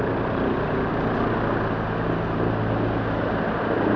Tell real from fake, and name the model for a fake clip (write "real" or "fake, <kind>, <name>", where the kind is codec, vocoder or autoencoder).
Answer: real